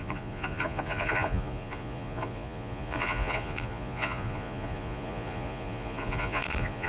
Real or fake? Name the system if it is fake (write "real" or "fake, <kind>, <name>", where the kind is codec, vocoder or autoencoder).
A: fake, vocoder, Vocos